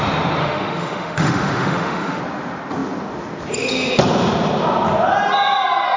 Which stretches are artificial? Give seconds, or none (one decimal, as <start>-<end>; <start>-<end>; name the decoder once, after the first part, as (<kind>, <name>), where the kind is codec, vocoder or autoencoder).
0.4-2.2 (autoencoder, DAC-VAE)